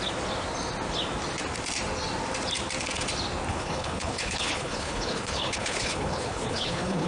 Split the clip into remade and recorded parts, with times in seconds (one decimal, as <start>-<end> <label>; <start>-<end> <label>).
0.0-3.5 recorded; 3.5-7.1 remade